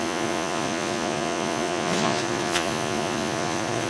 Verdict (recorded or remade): remade